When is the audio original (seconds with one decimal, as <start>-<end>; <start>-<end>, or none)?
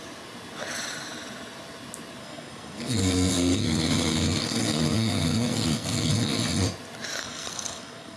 0.0-2.2; 6.1-7.2